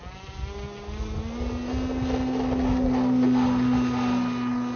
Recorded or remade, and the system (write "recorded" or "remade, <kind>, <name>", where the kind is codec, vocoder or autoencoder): recorded